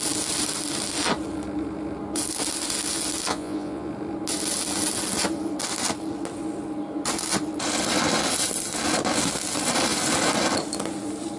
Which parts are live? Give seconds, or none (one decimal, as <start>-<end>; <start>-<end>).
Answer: 0.0-3.3; 3.9-11.4